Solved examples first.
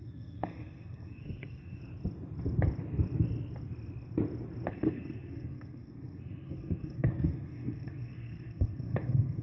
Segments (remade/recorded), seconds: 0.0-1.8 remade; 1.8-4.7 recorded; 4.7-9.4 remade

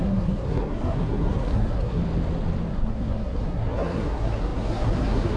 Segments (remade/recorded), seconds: 0.0-2.0 remade; 2.0-2.7 recorded; 2.7-5.4 remade

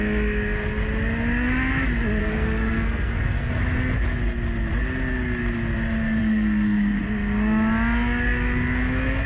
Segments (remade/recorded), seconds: 0.0-2.2 recorded; 2.2-3.5 remade; 3.5-6.2 recorded; 6.2-7.0 remade; 7.0-9.3 recorded

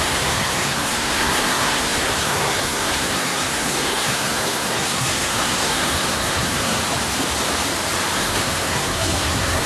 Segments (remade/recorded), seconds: 0.0-6.8 remade; 6.8-8.2 recorded; 8.2-9.7 remade

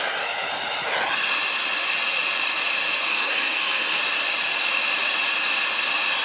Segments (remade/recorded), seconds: 0.0-3.1 recorded; 3.1-4.0 remade; 4.0-6.2 recorded

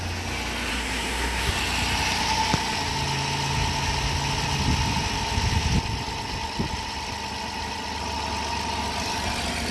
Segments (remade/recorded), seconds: 0.0-0.7 recorded; 0.7-1.5 remade; 1.5-9.7 recorded

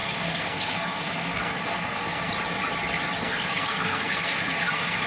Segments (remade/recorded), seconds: 0.0-2.3 remade; 2.3-3.2 recorded; 3.2-5.1 remade